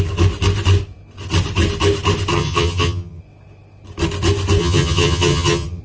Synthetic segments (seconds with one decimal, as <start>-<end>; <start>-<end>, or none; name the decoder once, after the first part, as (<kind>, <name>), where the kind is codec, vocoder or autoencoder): 2.3-3.2 (vocoder, HiFi-GAN); 4.6-5.8